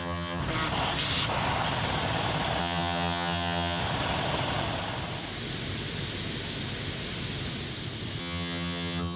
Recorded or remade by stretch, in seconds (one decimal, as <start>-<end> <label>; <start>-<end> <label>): 0.0-0.4 remade; 0.4-2.6 recorded; 2.6-3.8 remade; 3.8-8.2 recorded; 8.2-9.2 remade